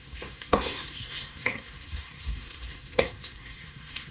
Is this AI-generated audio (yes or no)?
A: yes